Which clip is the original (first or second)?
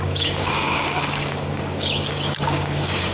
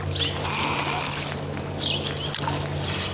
second